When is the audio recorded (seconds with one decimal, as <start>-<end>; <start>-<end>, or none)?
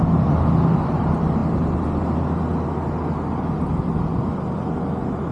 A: 0.0-5.3